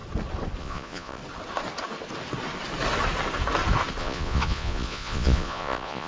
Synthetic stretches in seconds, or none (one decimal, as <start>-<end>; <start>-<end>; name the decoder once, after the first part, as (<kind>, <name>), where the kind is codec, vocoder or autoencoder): 0.6-1.2 (vocoder, Vocos); 4.0-6.1